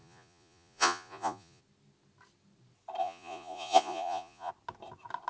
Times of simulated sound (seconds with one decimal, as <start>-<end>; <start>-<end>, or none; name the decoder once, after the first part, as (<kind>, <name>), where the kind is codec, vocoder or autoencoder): 0.0-1.6 (vocoder, Vocos); 3.0-4.5